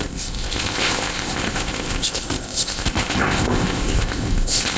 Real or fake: fake